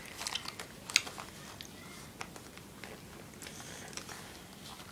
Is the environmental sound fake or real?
real